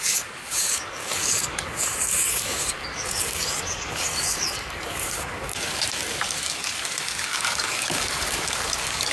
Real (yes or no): no